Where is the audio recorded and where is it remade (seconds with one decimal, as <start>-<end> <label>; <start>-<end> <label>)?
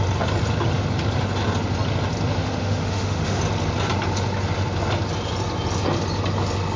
0.0-2.4 recorded; 2.4-3.4 remade; 3.4-6.8 recorded